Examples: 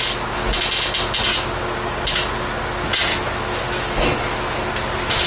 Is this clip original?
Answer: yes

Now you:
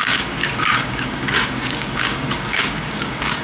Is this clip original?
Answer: no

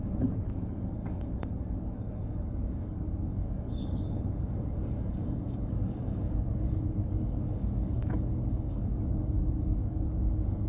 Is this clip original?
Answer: no